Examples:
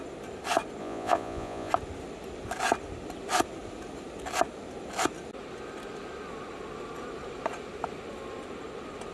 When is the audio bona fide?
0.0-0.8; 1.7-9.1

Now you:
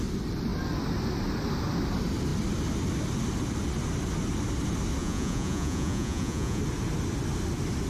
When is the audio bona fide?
0.0-5.0; 6.6-7.9

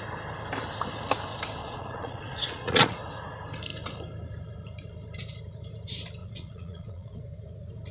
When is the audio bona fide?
0.0-1.6; 3.0-6.2; 7.2-7.9

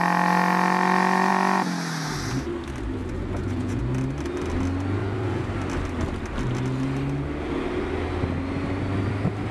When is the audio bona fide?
0.0-3.0; 3.8-5.0; 5.5-9.5